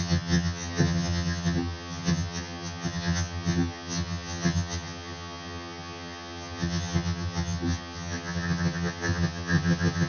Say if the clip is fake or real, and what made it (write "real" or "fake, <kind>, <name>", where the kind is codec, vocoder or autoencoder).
fake, vocoder, HiFi-GAN